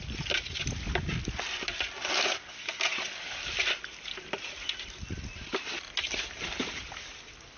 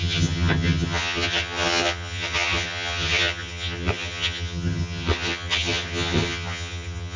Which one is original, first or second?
first